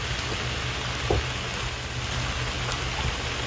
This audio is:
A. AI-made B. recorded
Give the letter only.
B